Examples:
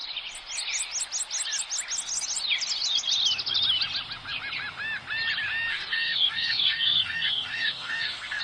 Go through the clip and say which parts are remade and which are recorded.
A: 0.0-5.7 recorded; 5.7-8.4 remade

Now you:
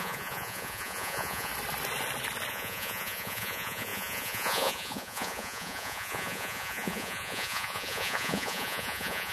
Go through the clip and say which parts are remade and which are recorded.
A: 0.0-1.5 remade; 1.5-2.5 recorded; 2.5-9.3 remade